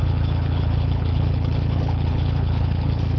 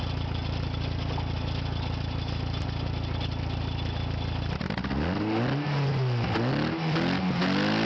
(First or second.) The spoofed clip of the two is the first